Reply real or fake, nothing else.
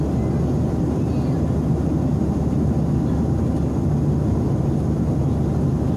real